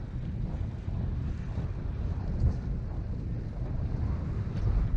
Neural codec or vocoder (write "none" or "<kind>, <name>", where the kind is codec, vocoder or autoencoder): none